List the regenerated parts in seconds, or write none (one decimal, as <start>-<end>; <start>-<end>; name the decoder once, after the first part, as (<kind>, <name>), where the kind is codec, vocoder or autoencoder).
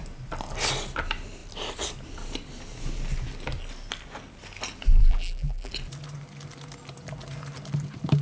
5.0-5.7 (vocoder, BigVGAN v2)